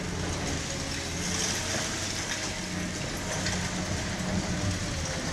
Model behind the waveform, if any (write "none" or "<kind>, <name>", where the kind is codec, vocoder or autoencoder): none